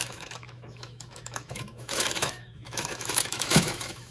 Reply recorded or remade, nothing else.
remade